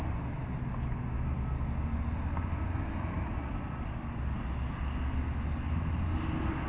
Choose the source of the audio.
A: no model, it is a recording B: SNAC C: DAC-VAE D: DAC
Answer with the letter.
A